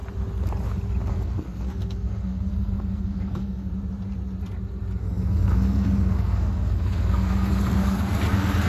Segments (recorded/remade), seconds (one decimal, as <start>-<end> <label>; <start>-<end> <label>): 0.0-1.1 recorded; 1.1-3.7 remade; 3.7-5.0 recorded; 5.0-8.7 remade